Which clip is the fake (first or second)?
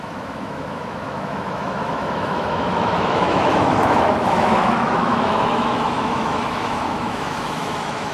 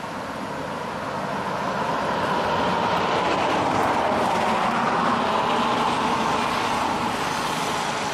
first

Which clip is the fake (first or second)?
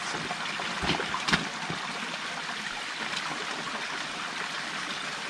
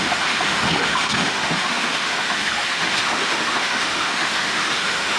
second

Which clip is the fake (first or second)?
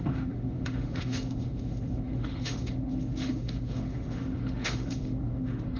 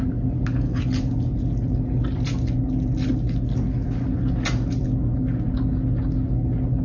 first